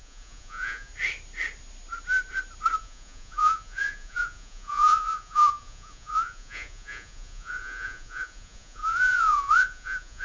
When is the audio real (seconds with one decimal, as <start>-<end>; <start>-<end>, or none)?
0.9-2.8